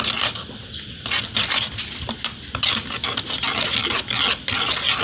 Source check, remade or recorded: recorded